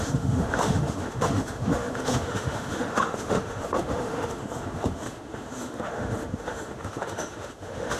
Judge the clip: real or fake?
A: fake